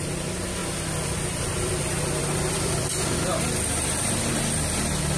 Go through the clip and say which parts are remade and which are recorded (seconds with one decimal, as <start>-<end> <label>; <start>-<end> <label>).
0.0-0.6 recorded; 0.6-3.0 remade; 3.0-5.2 recorded